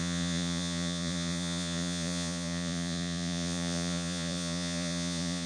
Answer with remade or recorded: remade